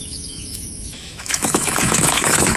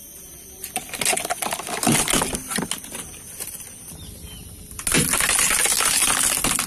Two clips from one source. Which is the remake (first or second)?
first